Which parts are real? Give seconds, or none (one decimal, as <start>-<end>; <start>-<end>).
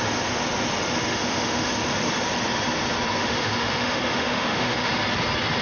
0.0-1.0; 1.7-3.2; 4.9-5.6